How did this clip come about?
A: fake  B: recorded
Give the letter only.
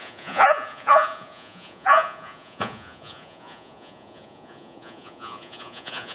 A